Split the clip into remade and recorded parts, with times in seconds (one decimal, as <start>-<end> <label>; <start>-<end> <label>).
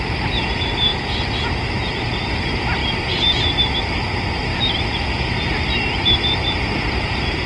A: 0.0-2.8 recorded; 2.8-3.7 remade; 3.7-4.5 recorded; 4.5-5.3 remade; 5.3-6.4 recorded; 6.4-7.5 remade